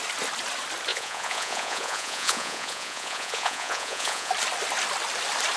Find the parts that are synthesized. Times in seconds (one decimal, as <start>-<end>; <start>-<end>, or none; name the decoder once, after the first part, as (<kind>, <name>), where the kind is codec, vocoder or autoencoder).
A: 0.9-4.3 (vocoder, Vocos)